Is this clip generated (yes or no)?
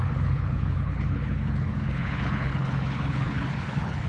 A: yes